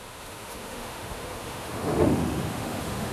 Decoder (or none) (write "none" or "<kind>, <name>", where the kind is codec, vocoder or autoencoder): autoencoder, DAC-VAE